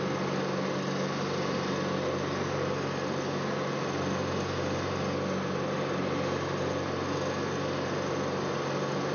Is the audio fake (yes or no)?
no